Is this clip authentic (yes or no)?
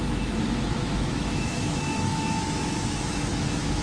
no